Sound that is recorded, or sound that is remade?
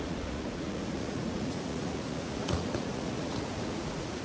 remade